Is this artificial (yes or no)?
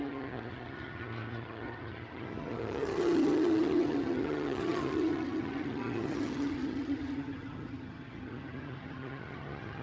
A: yes